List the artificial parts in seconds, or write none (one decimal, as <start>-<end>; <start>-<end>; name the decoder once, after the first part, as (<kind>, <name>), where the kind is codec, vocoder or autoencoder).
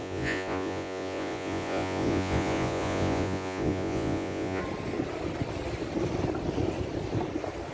0.0-4.6 (vocoder, Vocos)